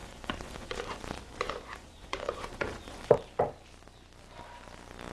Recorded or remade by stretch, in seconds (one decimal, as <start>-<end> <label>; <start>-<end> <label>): 0.0-3.1 remade; 3.1-5.1 recorded